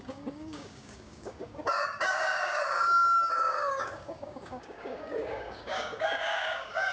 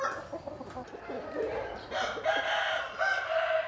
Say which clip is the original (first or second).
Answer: second